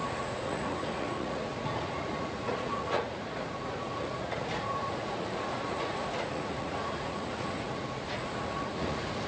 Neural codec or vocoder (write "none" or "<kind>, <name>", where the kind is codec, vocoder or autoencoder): vocoder, Vocos